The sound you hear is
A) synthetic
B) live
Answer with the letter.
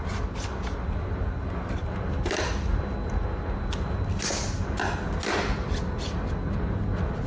B